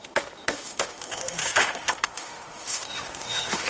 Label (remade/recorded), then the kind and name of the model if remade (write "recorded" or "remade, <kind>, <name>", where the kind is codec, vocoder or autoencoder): remade, autoencoder, DAC-VAE